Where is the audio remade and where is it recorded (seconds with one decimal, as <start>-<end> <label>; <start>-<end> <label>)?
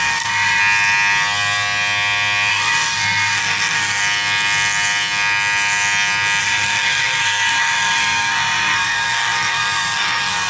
0.0-0.6 remade; 0.6-2.5 recorded; 2.5-4.0 remade; 4.0-6.4 recorded; 6.4-10.5 remade